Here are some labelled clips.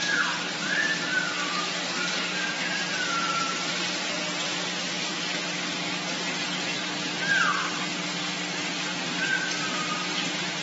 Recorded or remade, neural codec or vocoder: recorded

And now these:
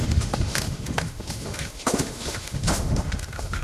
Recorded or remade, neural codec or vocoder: remade, autoencoder, DAC-VAE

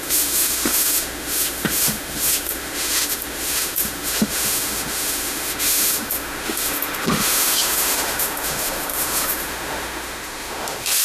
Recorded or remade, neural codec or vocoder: remade, autoencoder, DAC-VAE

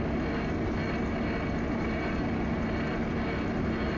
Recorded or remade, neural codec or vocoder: recorded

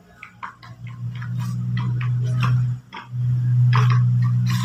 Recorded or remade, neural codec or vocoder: recorded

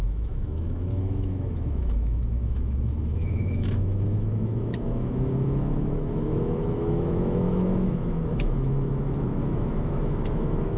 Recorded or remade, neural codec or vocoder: remade, autoencoder, DAC-VAE